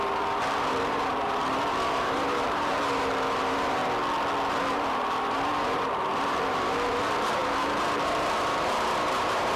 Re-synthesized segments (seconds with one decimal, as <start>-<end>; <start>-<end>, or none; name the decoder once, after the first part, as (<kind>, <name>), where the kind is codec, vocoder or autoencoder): 0.0-3.8 (vocoder, BigVGAN v2); 4.5-9.6